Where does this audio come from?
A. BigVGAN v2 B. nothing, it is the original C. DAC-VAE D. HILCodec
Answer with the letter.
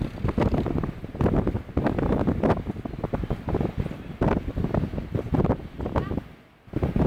B